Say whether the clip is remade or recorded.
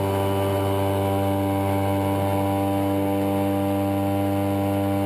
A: recorded